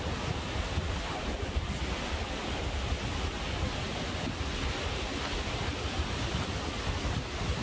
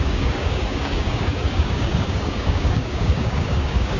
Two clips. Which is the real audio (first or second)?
first